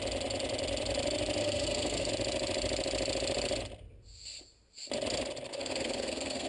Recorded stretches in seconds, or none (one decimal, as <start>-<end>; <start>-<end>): 0.0-1.4; 2.1-5.5